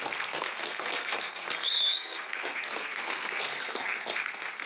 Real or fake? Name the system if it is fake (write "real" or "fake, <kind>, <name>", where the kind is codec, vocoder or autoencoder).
fake, codec, SNAC